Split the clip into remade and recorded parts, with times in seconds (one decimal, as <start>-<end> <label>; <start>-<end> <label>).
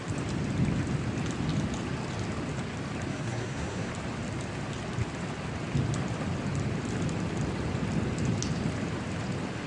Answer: 0.0-3.1 recorded; 3.1-3.9 remade; 3.9-9.7 recorded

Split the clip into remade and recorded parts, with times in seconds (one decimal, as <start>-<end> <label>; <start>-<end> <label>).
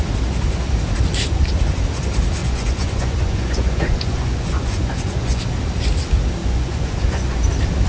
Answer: 0.0-2.4 recorded; 2.4-5.4 remade; 5.4-6.4 recorded; 6.4-7.4 remade; 7.4-7.9 recorded